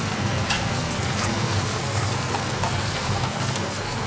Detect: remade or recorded remade